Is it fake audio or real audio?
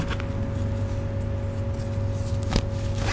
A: real